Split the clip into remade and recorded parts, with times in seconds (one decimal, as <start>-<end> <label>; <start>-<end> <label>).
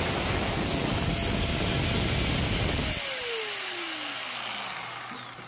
0.0-5.5 recorded